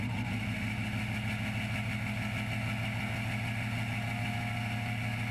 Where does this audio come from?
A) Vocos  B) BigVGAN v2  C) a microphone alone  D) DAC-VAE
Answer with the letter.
C